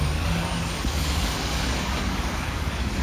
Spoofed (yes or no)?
yes